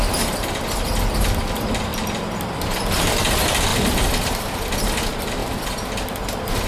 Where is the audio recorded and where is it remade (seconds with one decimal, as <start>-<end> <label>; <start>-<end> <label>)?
0.0-1.9 recorded; 1.9-3.0 remade; 3.0-3.7 recorded; 3.7-4.7 remade; 4.7-5.4 recorded; 5.4-6.7 remade